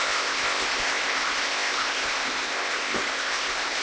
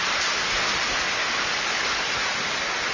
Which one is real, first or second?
second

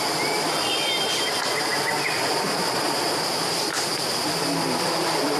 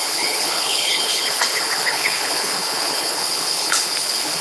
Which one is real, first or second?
first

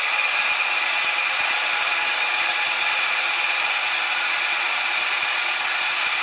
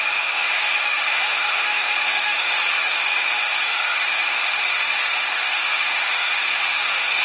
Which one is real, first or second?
first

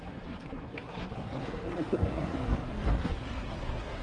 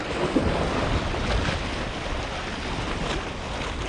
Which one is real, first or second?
second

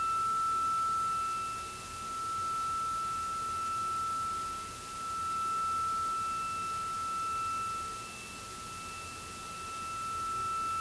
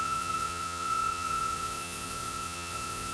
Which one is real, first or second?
first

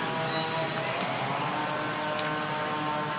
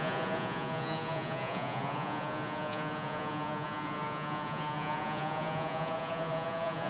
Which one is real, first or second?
first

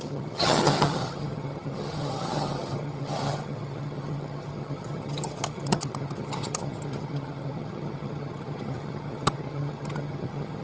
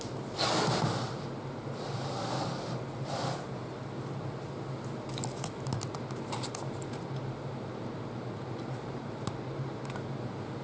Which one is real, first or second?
second